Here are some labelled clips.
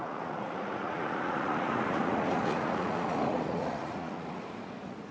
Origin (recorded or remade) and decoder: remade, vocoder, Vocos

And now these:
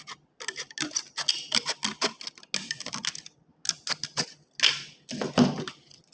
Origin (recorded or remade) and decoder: recorded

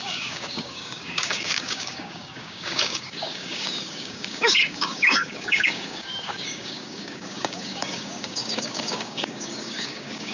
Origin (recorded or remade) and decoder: remade, codec, DAC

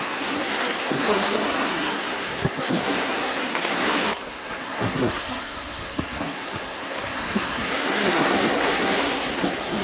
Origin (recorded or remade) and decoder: remade, codec, SNAC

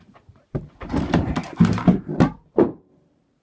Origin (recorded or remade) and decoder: remade, vocoder, BigVGAN v2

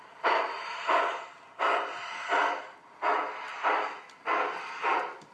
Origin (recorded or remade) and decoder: recorded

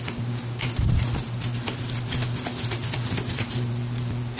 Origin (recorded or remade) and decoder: recorded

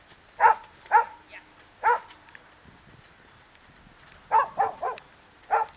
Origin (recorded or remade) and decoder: recorded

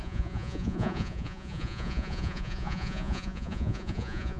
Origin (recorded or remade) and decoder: remade, vocoder, Vocos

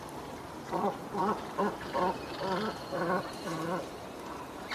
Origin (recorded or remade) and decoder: recorded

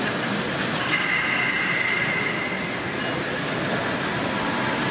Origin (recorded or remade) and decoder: recorded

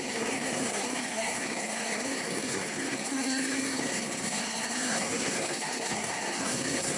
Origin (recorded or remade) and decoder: remade, codec, SNAC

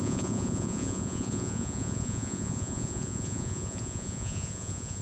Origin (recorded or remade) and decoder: remade, vocoder, Vocos